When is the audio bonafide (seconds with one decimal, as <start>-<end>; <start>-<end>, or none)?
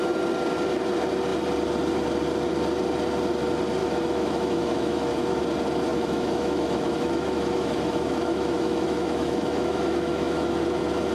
0.0-3.8; 5.4-5.9; 10.6-11.1